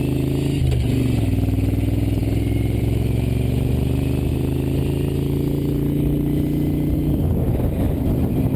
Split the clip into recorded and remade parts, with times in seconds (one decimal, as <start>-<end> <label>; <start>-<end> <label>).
0.0-8.6 recorded